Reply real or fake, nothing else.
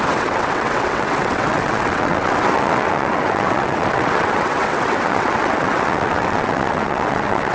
fake